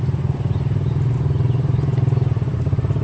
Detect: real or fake real